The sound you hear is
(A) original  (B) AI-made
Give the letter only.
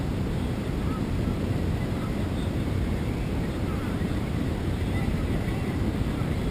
B